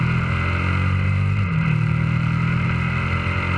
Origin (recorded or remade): recorded